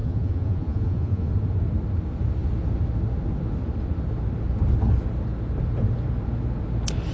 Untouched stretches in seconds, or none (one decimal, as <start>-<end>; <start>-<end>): 1.3-7.1